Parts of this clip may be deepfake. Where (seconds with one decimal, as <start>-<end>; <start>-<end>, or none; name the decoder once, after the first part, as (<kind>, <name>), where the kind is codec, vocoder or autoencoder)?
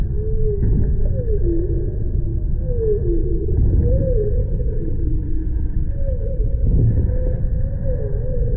4.4-7.4 (codec, HILCodec)